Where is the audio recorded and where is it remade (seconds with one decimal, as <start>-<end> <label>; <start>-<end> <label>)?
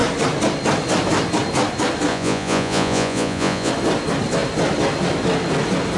0.0-2.1 recorded; 2.1-3.7 remade; 3.7-6.0 recorded